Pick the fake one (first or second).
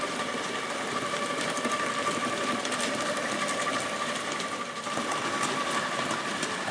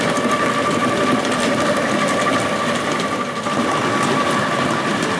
first